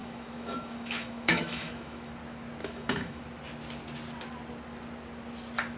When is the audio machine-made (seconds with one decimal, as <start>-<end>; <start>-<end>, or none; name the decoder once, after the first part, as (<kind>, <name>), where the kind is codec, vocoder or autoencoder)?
0.0-2.1 (autoencoder, DAC-VAE); 2.6-3.2